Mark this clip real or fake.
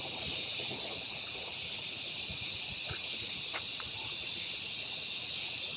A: fake